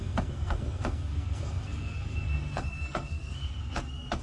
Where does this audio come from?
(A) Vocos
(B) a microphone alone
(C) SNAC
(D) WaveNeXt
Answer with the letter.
C